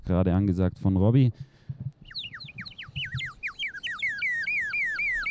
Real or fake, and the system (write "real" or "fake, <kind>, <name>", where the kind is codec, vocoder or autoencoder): real